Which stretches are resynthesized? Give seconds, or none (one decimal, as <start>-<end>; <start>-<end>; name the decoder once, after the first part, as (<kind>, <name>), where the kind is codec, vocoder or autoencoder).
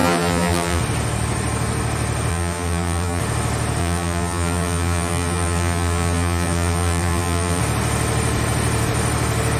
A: 0.0-0.8 (vocoder, BigVGAN v2); 2.3-3.2; 3.8-7.6